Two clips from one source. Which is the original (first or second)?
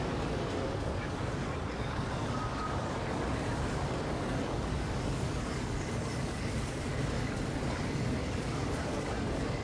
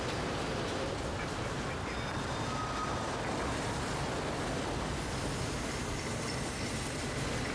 second